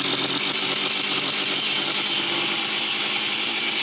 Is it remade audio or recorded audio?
recorded